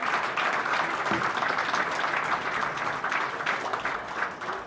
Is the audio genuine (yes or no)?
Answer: yes